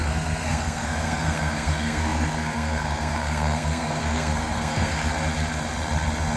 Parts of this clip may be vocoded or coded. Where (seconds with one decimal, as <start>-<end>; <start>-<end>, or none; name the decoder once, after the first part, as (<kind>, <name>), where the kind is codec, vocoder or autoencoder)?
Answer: 0.0-5.0 (codec, SNAC)